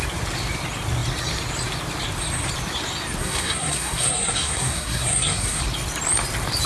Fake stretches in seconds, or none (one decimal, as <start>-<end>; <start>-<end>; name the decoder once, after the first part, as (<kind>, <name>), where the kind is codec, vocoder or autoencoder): 3.2-5.6 (codec, SNAC)